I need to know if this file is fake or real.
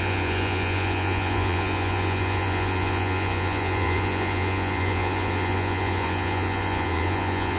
fake